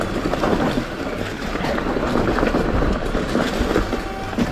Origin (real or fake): real